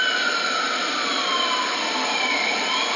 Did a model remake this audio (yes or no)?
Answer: no